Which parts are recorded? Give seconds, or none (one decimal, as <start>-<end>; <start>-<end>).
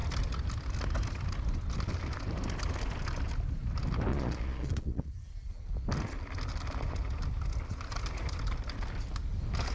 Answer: 0.0-4.1; 5.1-9.7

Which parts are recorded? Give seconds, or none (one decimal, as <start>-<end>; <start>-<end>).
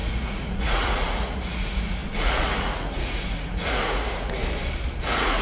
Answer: 4.4-5.0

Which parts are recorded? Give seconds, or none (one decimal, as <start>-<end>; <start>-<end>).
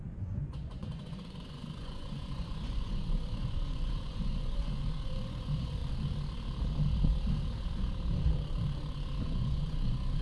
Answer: 5.8-9.2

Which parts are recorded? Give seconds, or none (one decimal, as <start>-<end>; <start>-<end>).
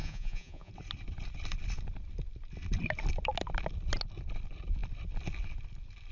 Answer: 0.7-6.1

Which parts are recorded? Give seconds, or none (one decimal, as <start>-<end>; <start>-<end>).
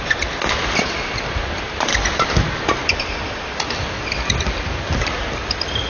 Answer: 0.0-5.9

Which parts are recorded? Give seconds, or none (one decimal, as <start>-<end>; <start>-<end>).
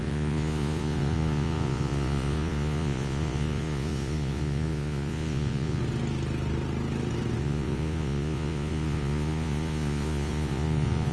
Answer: 5.8-7.4